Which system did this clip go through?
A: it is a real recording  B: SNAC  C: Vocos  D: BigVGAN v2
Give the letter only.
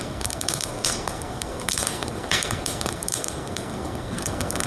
B